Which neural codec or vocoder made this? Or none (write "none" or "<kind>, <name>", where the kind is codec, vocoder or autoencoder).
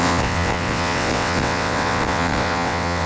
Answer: vocoder, WaveNeXt